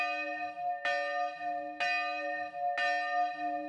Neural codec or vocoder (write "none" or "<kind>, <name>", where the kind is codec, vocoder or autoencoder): none